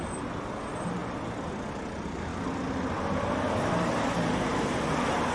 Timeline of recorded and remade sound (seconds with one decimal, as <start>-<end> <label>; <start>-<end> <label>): 0.0-5.3 recorded